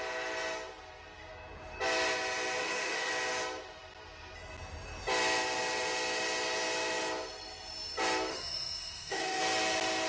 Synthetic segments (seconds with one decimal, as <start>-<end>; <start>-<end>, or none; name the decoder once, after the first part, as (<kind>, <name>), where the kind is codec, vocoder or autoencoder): 2.6-3.1 (autoencoder, DAC-VAE); 8.3-9.4